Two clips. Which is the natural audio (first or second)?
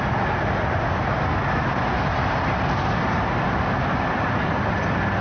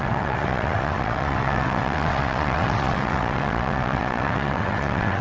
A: first